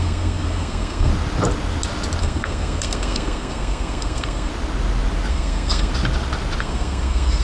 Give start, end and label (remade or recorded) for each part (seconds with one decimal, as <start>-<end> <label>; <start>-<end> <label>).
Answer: 0.0-1.1 remade; 1.1-2.2 recorded; 2.2-4.5 remade; 4.5-5.3 recorded; 5.3-5.9 remade; 5.9-6.6 recorded; 6.6-7.4 remade